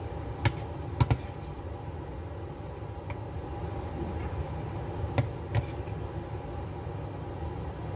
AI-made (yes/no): no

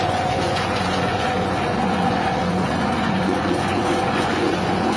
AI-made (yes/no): yes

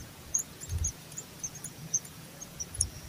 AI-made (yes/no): yes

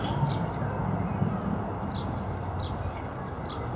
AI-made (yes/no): no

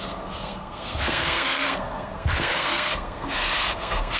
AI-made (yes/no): yes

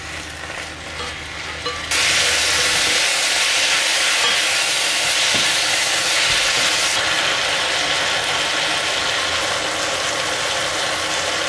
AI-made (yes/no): no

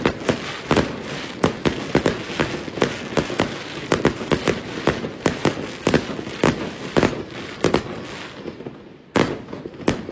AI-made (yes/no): no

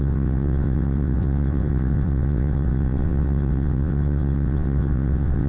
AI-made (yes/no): yes